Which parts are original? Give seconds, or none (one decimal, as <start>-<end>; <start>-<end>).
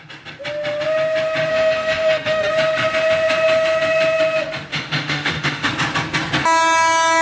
0.0-1.5; 2.5-4.7; 5.7-7.2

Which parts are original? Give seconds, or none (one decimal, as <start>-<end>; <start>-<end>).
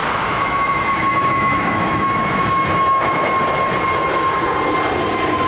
3.3-5.5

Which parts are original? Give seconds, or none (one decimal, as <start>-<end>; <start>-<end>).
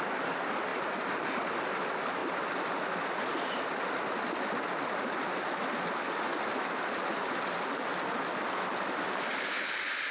0.0-10.1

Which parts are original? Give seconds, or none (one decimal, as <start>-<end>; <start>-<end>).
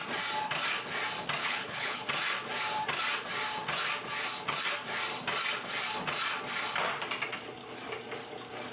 0.0-1.4; 2.0-8.7